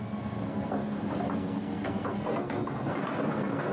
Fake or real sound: fake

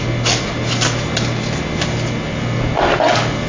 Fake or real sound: real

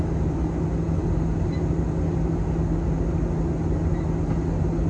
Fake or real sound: real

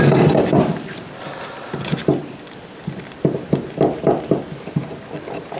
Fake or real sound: real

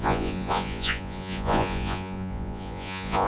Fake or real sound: fake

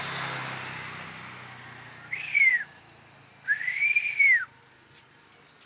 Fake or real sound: real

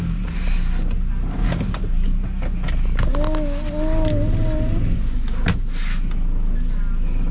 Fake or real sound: real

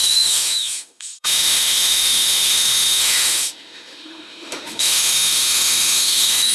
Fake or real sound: fake